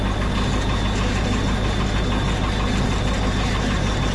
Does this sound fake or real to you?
real